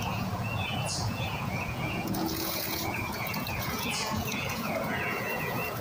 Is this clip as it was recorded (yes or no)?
no